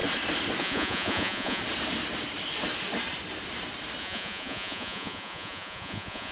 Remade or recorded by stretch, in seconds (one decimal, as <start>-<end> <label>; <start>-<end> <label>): 0.0-0.6 recorded; 0.6-1.6 remade; 1.6-4.0 recorded; 4.0-6.3 remade

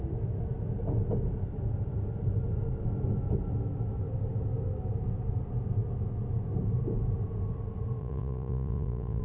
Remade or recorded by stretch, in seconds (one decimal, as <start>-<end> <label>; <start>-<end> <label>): 0.0-8.0 recorded; 8.0-9.2 remade

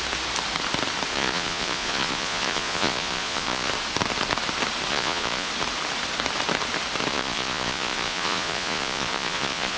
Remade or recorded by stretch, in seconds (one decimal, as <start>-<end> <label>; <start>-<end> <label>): 0.0-1.1 recorded; 1.1-3.7 remade; 3.7-4.9 recorded; 4.9-5.5 remade; 5.5-7.1 recorded; 7.1-9.8 remade

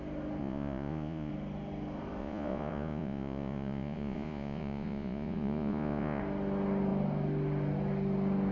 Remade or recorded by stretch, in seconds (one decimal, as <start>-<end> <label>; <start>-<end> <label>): 0.0-0.4 recorded; 0.4-1.3 remade; 1.3-2.2 recorded; 2.2-6.2 remade; 6.2-8.5 recorded

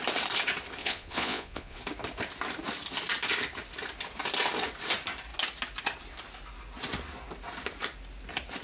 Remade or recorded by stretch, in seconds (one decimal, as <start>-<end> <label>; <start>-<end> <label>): 0.0-0.8 recorded; 0.8-1.8 remade; 1.8-8.6 recorded

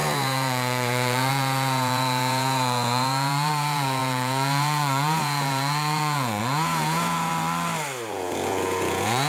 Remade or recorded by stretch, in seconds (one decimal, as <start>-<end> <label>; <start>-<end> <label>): 0.0-7.3 remade; 7.3-8.1 recorded; 8.1-9.3 remade